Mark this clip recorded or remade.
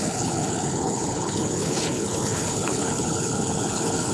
remade